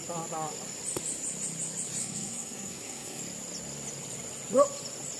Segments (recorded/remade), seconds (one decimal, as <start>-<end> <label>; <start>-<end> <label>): 0.0-2.0 recorded; 2.0-3.2 remade; 3.2-5.2 recorded